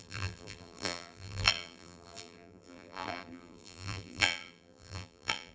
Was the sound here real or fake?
fake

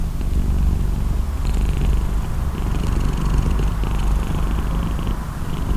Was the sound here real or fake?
real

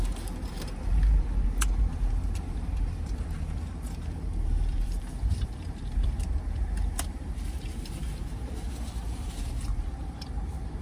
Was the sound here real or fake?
fake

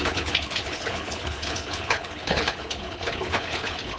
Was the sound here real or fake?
fake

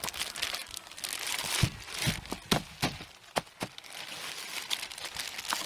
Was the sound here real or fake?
real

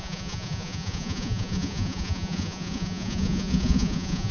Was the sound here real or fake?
fake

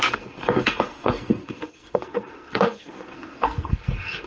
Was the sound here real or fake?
fake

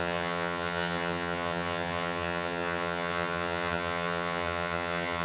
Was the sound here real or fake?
fake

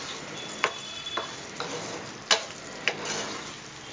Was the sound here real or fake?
real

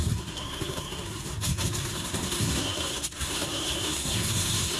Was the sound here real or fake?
fake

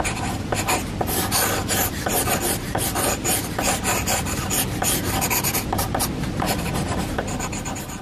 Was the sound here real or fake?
real